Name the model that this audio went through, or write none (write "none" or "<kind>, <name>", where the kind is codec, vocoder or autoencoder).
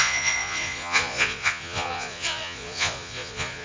vocoder, Vocos